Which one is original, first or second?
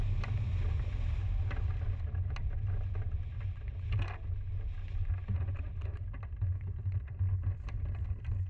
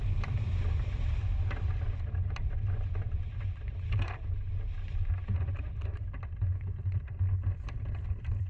first